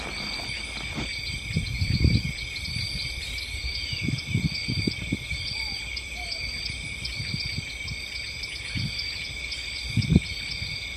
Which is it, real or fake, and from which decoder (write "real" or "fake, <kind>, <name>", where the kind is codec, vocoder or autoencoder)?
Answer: real